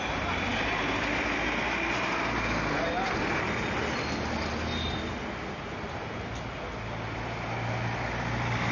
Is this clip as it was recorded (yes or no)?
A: yes